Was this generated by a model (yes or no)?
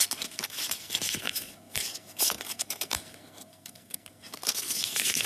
yes